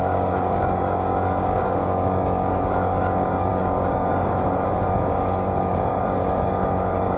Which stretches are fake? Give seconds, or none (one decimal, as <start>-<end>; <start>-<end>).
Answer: 0.0-7.2